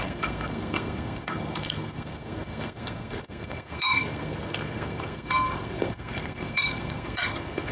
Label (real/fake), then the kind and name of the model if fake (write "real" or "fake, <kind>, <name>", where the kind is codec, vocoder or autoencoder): fake, codec, SNAC